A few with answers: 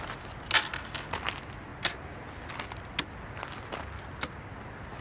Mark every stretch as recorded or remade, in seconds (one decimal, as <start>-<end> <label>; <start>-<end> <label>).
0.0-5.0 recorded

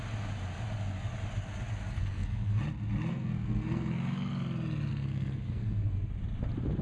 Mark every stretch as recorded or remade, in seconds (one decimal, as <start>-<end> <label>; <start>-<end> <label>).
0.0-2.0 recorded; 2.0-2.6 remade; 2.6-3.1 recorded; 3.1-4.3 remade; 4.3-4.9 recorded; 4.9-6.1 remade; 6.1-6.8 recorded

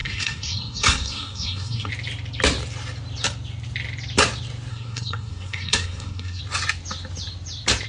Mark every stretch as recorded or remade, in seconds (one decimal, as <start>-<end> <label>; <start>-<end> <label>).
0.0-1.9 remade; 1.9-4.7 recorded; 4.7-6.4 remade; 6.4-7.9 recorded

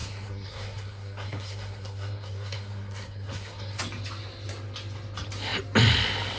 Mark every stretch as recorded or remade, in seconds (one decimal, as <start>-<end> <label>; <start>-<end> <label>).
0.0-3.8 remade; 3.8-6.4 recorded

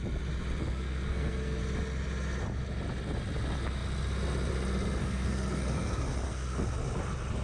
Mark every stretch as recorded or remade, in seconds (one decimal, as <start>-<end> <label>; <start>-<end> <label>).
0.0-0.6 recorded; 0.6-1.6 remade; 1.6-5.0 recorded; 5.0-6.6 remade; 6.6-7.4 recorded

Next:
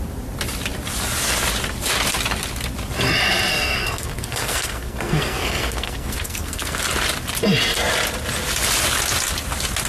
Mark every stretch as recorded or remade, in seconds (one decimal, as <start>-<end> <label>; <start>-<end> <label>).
0.0-3.5 recorded; 3.5-6.8 remade; 6.8-9.9 recorded

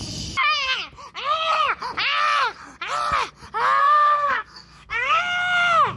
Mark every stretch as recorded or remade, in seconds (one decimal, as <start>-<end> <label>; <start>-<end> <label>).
0.0-3.8 recorded; 3.8-5.2 remade; 5.2-6.0 recorded